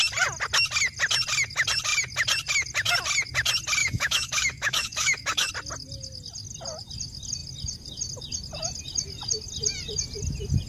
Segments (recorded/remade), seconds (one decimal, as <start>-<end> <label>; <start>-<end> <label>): 0.0-3.8 recorded; 3.8-5.5 remade; 5.5-10.7 recorded